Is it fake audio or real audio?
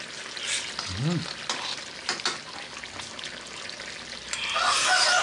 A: real